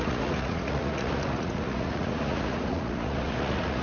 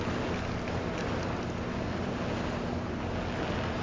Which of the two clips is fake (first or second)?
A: first